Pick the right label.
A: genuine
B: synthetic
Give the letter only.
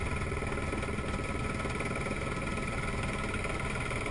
A